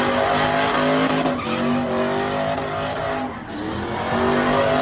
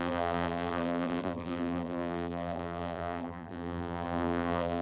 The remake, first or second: second